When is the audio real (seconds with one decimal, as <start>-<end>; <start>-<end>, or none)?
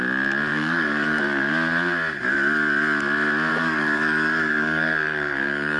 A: 0.0-0.5; 1.2-3.5